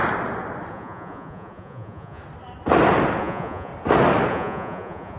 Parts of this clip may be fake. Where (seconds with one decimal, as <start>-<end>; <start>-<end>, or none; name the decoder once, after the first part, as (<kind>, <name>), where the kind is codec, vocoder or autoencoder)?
0.7-2.2 (vocoder, Vocos); 3.2-3.7; 4.3-5.2